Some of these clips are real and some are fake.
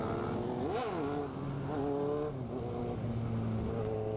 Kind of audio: real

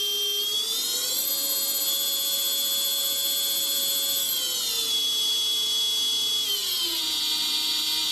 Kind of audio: real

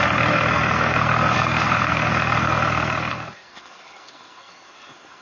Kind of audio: fake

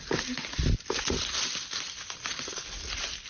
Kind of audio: real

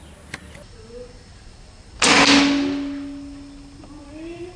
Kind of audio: real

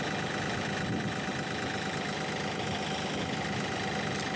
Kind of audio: real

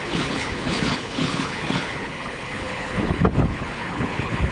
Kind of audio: fake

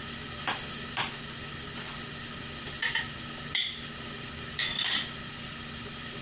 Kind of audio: real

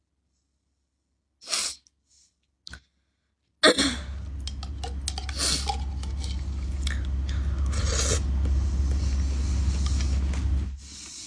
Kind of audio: real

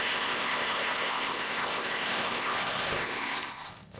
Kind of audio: fake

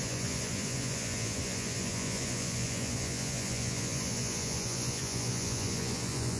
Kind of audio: fake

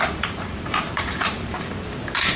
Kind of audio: fake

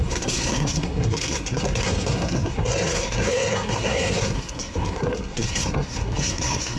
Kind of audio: fake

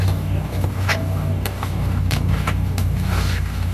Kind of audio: fake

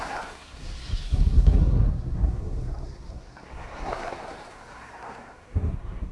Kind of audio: fake